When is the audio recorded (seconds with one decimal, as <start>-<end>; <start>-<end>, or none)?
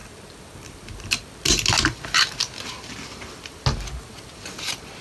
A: 0.0-5.0